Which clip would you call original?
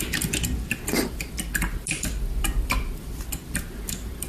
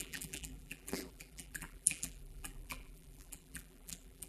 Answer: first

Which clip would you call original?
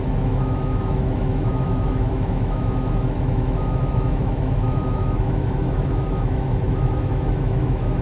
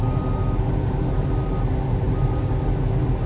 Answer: second